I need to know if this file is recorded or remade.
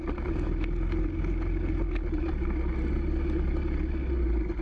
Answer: recorded